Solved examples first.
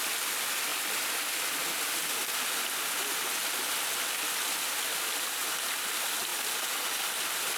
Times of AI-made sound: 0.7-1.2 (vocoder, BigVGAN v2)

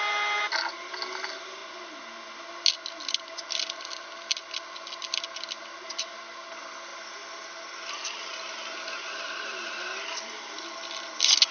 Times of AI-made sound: none

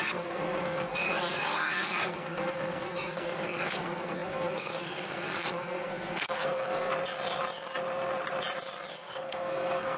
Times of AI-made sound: 0.0-6.9 (codec, SNAC); 8.9-10.0

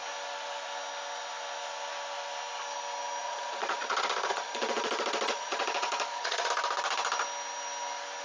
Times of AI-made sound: 3.2-6.5 (vocoder, Vocos)

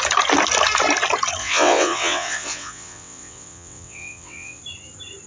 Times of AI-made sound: 1.4-4.6 (vocoder, WaveNeXt)

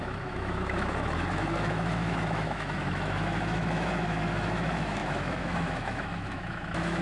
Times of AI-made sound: 0.0-7.0 (autoencoder, DAC-VAE)

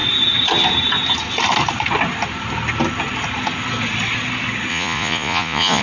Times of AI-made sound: 4.7-5.8 (vocoder, Vocos)

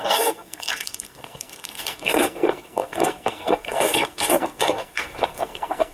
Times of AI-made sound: 0.0-5.9 (codec, SNAC)